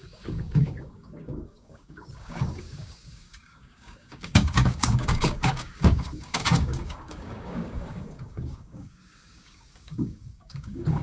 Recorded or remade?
remade